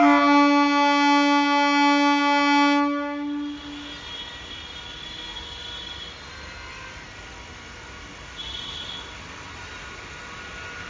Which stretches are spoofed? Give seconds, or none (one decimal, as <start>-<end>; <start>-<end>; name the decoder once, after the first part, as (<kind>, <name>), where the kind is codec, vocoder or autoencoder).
none